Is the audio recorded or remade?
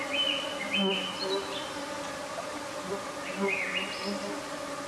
recorded